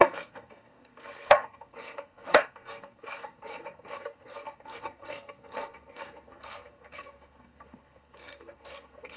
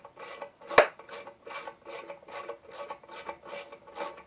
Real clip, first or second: second